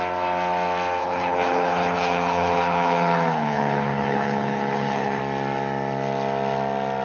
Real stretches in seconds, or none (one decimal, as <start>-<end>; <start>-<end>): 0.0-1.0; 5.2-7.0